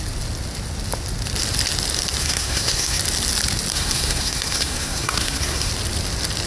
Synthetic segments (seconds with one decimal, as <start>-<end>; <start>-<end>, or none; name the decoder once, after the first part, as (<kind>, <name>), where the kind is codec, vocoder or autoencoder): 2.2-3.0 (codec, SNAC); 3.7-5.7